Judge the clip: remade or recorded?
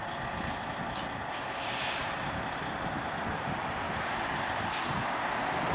recorded